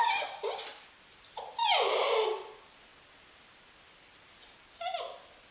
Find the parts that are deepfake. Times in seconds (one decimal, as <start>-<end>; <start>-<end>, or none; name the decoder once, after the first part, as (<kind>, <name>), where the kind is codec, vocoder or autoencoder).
none